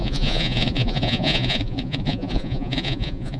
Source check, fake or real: fake